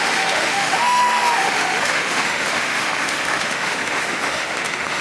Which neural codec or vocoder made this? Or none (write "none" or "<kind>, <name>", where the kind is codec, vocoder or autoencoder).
autoencoder, DAC-VAE